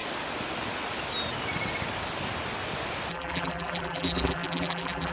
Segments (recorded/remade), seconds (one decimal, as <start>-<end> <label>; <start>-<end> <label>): 0.0-3.1 recorded; 3.1-5.1 remade